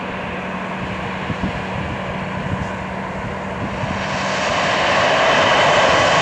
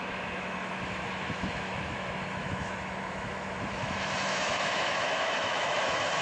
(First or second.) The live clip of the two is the first